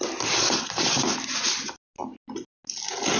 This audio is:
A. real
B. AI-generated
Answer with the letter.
A